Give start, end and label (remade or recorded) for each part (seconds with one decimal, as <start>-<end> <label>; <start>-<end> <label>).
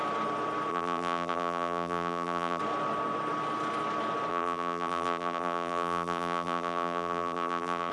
0.0-0.7 recorded; 0.7-2.6 remade; 2.6-4.3 recorded; 4.3-7.9 remade